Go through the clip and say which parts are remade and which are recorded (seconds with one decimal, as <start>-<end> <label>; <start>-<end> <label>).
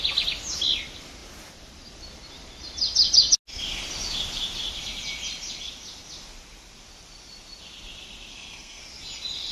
0.0-8.3 recorded; 8.3-8.8 remade; 8.8-9.5 recorded